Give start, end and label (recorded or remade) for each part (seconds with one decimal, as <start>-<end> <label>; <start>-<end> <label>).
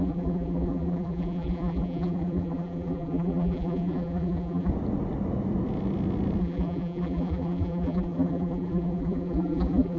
0.0-4.7 remade; 4.7-6.4 recorded; 6.4-10.0 remade